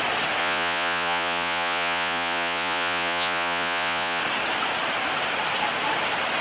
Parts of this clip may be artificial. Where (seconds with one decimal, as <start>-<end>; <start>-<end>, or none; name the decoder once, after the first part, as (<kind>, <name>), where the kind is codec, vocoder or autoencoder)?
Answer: 0.4-4.2 (vocoder, Vocos)